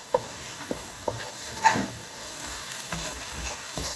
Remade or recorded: remade